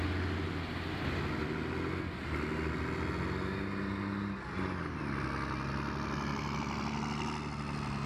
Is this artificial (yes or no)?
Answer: no